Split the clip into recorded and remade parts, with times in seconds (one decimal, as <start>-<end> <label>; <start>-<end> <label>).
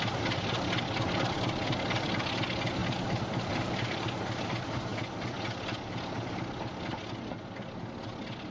0.0-8.5 recorded